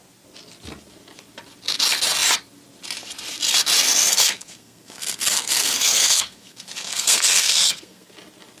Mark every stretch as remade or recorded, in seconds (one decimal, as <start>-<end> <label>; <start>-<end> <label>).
0.0-4.1 recorded; 4.1-8.1 remade; 8.1-8.6 recorded

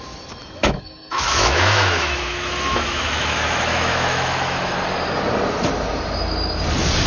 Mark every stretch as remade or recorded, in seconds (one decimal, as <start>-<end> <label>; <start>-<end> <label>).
0.0-0.4 recorded; 0.4-4.7 remade; 4.7-7.1 recorded

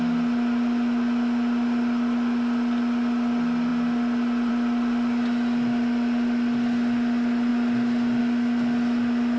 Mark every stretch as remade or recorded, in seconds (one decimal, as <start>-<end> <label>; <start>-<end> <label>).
0.0-9.4 recorded

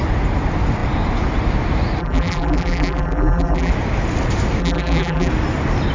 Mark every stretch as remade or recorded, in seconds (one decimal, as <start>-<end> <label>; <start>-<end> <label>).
0.0-2.0 recorded; 2.0-3.7 remade; 3.7-4.6 recorded; 4.6-5.3 remade; 5.3-5.9 recorded

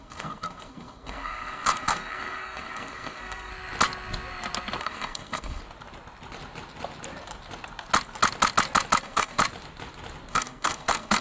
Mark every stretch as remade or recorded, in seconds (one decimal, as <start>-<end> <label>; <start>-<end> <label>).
0.0-3.5 remade; 3.5-4.8 recorded; 4.8-5.6 remade; 5.6-9.0 recorded; 9.0-9.4 remade; 9.4-10.3 recorded; 10.3-11.2 remade